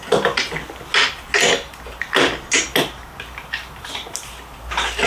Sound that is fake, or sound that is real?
real